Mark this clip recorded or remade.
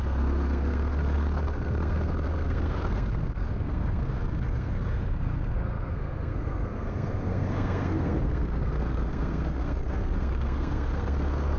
remade